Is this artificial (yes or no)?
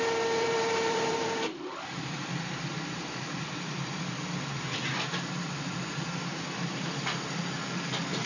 yes